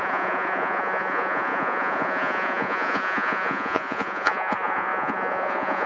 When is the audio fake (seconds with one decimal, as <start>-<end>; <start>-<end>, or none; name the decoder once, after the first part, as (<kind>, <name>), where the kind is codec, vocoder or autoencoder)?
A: 0.0-5.9 (vocoder, Vocos)